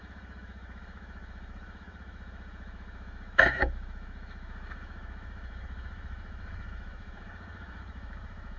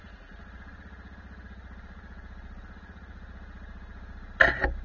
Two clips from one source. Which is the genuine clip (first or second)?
second